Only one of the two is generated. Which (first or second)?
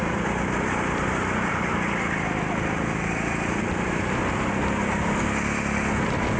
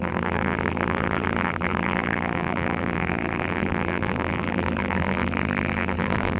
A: second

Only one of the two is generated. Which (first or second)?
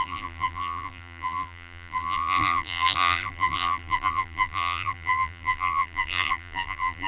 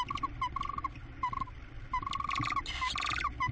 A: first